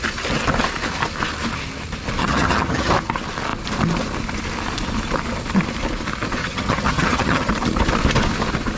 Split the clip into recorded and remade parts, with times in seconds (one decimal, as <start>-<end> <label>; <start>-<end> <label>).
0.0-2.2 recorded; 2.2-2.9 remade; 2.9-6.4 recorded; 6.4-7.5 remade; 7.5-8.8 recorded